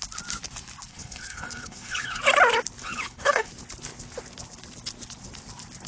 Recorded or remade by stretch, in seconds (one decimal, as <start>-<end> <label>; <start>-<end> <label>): 0.0-0.9 recorded; 0.9-2.2 remade; 2.2-2.8 recorded; 2.8-3.5 remade; 3.5-5.9 recorded